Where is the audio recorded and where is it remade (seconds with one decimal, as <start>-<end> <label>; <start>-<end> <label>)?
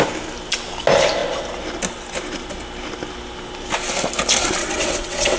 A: 0.0-4.6 recorded; 4.6-5.4 remade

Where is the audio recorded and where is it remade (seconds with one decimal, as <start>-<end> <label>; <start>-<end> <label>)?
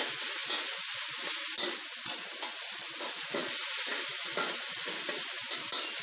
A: 0.0-6.0 recorded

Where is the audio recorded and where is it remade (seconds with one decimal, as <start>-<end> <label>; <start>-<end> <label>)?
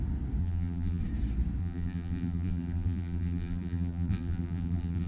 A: 0.0-0.4 recorded; 0.4-1.0 remade; 1.0-1.6 recorded; 1.6-5.1 remade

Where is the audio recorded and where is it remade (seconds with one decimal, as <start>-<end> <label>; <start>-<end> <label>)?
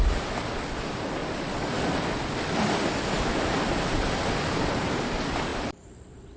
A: 0.0-1.2 recorded; 1.2-3.6 remade; 3.6-5.5 recorded; 5.5-6.4 remade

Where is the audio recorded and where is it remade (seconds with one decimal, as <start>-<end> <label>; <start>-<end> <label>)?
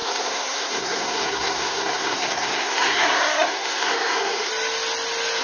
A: 0.0-4.5 remade; 4.5-5.4 recorded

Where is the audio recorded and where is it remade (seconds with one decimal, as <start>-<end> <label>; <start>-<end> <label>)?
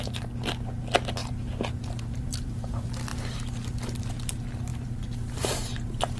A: 0.0-1.2 recorded; 1.2-2.7 remade; 2.7-4.7 recorded; 4.7-6.2 remade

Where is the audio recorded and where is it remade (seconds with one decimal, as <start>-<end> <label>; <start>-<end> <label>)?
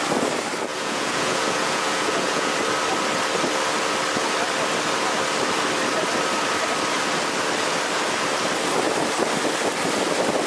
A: 0.0-0.7 recorded; 0.7-2.5 remade; 2.5-10.5 recorded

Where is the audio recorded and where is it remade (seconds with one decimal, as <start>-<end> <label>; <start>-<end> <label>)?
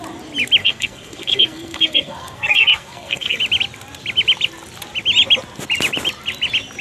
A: 0.0-0.6 recorded; 0.6-3.4 remade; 3.4-6.8 recorded